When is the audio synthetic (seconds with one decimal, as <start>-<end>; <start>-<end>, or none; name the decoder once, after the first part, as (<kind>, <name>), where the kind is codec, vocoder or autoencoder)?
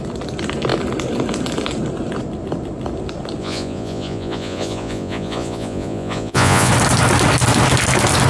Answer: 3.4-6.7 (vocoder, Vocos)